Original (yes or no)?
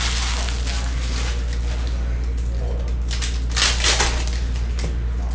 yes